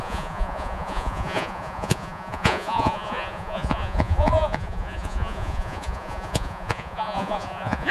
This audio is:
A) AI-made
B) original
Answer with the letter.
A